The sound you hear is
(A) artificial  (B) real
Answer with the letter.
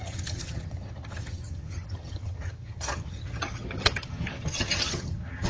A